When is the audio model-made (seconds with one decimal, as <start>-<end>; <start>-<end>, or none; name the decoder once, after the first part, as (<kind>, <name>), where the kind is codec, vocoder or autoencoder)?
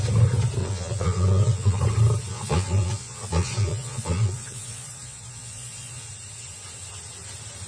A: 0.6-1.8 (vocoder, Vocos); 2.3-6.1